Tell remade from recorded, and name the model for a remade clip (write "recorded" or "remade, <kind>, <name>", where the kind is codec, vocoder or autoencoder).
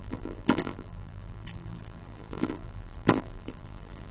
remade, vocoder, BigVGAN v2